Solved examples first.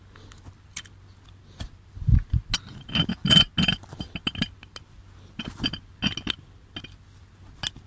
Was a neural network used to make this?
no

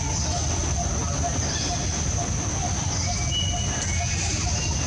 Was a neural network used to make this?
no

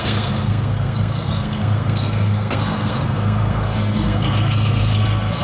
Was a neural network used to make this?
yes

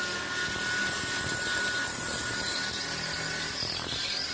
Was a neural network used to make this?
no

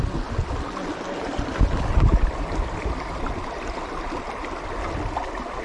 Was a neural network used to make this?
no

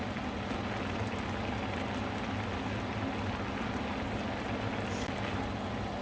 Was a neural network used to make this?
no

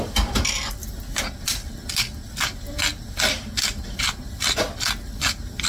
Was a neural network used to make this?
no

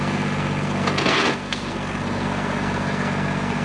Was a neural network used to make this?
yes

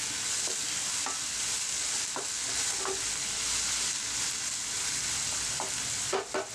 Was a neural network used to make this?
no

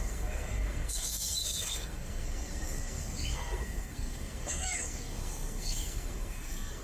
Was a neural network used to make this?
yes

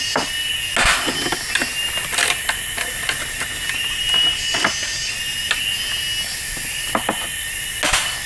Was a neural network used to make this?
no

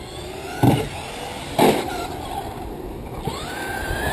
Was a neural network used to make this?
no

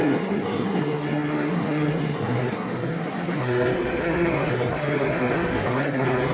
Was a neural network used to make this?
yes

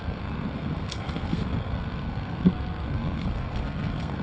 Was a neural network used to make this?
yes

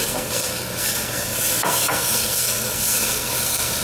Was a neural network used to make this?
yes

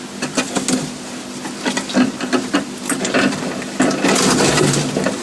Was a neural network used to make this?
no